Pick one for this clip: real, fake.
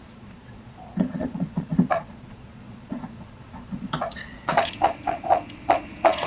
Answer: fake